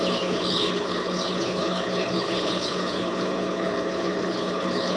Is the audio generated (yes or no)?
yes